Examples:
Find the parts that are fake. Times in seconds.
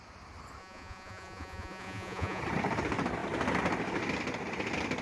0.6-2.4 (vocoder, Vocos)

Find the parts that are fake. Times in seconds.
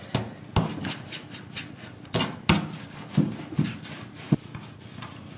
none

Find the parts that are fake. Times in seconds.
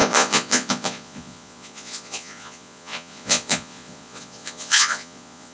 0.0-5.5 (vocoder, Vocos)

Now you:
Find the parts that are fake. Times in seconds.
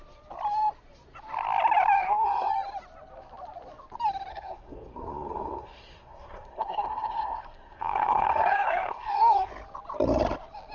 2.0-2.5 (codec, SNAC); 4.3-9.5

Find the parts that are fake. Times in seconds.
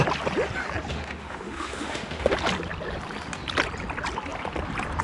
0.9-2.3 (autoencoder, DAC-VAE)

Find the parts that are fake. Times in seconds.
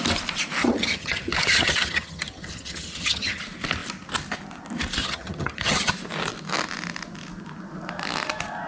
0.6-3.4 (vocoder, HiFi-GAN); 5.0-5.9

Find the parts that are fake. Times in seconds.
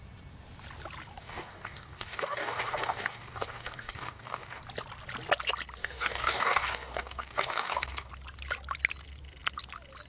1.2-4.6 (codec, DAC); 5.8-8.1